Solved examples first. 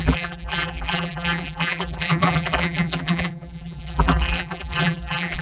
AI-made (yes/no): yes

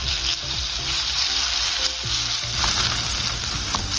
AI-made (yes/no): no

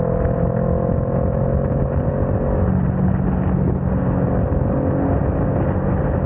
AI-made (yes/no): no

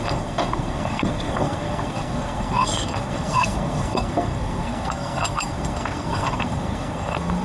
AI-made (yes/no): yes